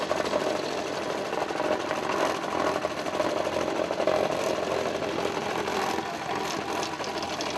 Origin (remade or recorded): recorded